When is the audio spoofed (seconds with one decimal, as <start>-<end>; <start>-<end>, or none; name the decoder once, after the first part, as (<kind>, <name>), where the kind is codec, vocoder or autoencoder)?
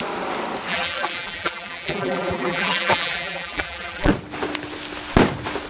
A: 0.7-4.1 (vocoder, BigVGAN v2)